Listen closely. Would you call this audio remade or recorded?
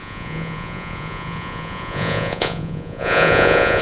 remade